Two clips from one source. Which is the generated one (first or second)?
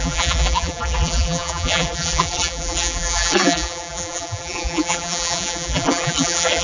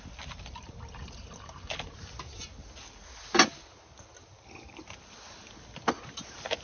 first